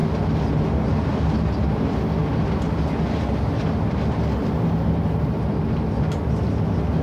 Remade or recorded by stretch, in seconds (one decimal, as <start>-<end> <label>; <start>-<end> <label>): 0.0-7.0 recorded

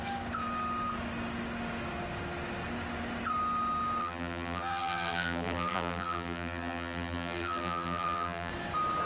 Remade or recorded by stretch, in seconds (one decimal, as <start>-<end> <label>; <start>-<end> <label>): 0.0-4.0 recorded; 4.0-8.5 remade; 8.5-9.1 recorded